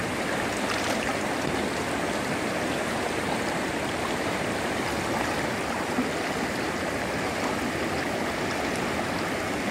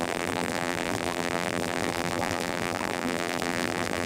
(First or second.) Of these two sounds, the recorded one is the first